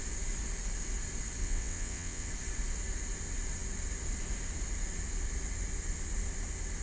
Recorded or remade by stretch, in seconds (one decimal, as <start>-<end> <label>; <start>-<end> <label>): 0.0-1.4 recorded; 1.4-2.3 remade; 2.3-6.8 recorded